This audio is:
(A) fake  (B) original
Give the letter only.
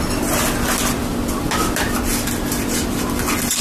B